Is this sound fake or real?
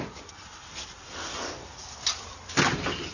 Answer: real